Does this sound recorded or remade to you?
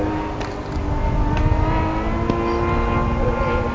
recorded